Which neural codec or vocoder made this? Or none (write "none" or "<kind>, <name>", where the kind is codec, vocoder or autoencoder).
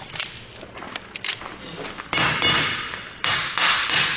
none